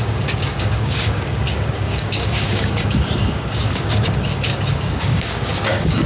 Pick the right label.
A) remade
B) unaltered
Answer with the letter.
A